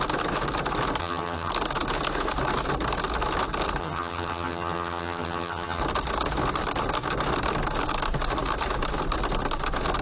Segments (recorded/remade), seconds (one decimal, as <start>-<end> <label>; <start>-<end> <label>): 0.0-1.0 recorded; 1.0-1.5 remade; 1.5-3.8 recorded; 3.8-5.8 remade; 5.8-10.0 recorded